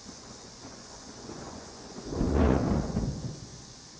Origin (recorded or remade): remade